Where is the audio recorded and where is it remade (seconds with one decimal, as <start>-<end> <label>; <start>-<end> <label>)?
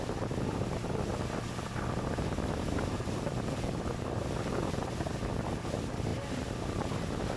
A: 0.0-1.1 recorded; 1.1-5.2 remade; 5.2-7.4 recorded